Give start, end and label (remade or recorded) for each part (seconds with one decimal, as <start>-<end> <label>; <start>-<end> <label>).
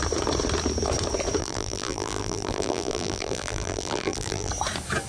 0.0-1.4 recorded; 1.4-4.5 remade; 4.5-5.1 recorded